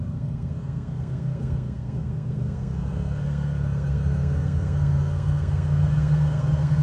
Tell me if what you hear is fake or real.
fake